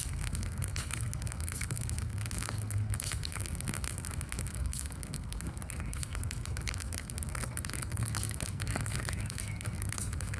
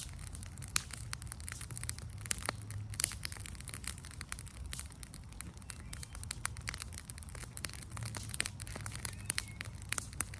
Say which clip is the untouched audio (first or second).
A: second